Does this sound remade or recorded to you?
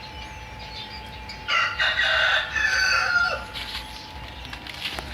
recorded